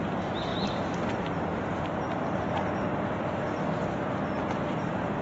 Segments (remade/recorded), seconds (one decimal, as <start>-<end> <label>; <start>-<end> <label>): 0.0-5.2 remade